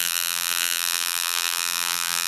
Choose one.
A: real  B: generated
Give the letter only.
B